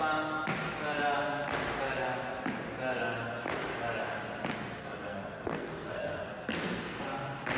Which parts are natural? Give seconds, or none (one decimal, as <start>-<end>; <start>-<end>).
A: 0.0-4.8; 7.0-7.6